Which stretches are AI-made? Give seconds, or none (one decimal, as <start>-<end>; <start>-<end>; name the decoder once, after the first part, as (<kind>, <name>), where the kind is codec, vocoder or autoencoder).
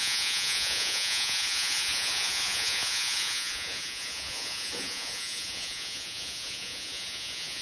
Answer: 0.0-7.6 (vocoder, Vocos)